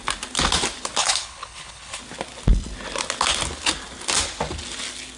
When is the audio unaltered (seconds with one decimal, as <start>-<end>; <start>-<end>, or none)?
0.0-1.0; 2.0-5.2